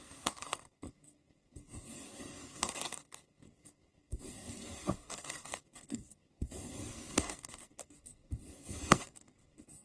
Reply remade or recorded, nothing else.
remade